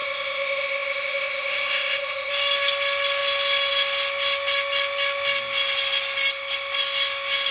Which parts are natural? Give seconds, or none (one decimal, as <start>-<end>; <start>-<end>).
2.3-7.5